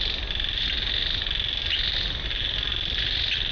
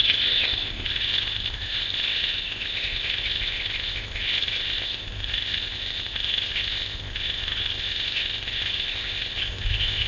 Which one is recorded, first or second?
first